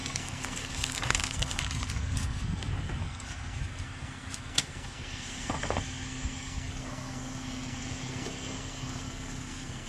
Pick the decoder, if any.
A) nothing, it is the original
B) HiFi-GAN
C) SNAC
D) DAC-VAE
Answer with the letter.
C